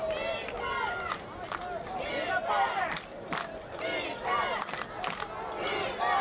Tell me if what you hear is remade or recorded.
recorded